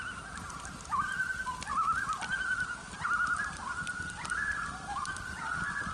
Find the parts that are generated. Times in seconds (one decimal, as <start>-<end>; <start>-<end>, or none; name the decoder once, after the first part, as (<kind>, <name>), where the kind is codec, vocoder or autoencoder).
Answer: none